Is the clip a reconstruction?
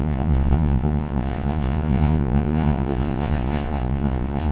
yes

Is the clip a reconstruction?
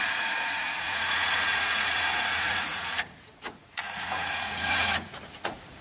yes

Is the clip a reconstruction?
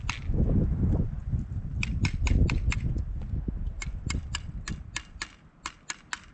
no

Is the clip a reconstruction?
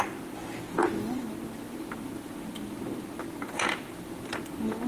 no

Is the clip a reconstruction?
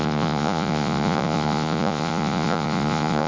yes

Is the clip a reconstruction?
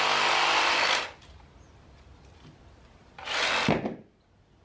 no